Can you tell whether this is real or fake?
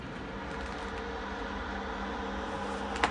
real